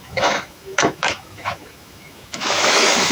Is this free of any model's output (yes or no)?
no